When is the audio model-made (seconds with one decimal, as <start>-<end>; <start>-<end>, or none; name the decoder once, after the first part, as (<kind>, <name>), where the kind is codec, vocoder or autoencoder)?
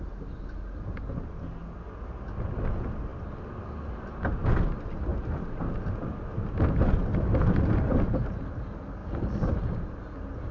none